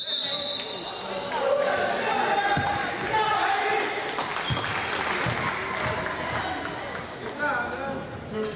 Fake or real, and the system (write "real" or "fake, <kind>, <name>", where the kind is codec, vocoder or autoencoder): real